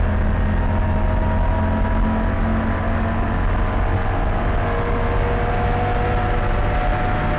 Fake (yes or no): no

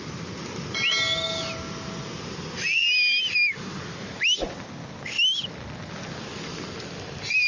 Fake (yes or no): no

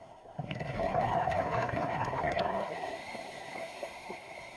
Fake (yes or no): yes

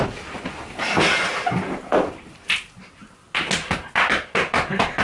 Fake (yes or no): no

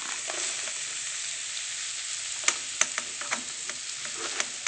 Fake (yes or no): no